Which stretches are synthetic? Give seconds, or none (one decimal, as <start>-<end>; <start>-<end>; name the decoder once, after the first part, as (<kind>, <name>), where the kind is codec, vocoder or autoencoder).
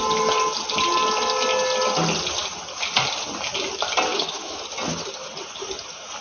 4.1-4.6 (autoencoder, DAC-VAE)